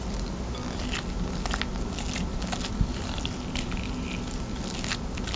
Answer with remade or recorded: recorded